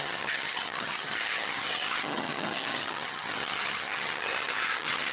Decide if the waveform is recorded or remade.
remade